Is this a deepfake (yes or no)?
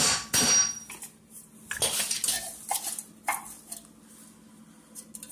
no